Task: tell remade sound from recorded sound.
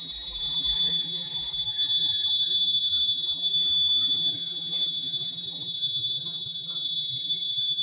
remade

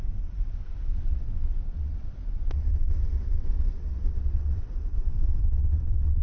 remade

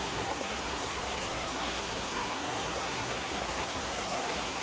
remade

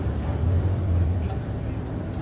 remade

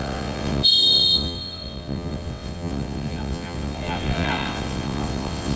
remade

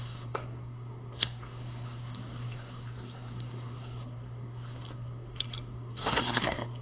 remade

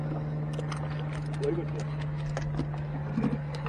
recorded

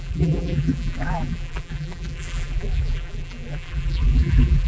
remade